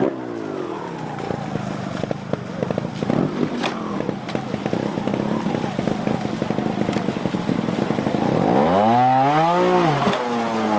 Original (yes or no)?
yes